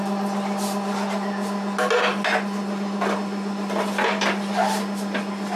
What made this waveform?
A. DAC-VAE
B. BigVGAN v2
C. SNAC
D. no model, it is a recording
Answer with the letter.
D